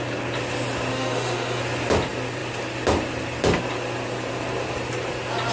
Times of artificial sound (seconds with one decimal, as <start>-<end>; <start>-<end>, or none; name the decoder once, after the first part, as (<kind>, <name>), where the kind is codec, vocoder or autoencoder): 0.9-1.6 (autoencoder, DAC-VAE)